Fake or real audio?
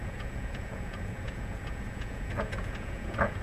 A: fake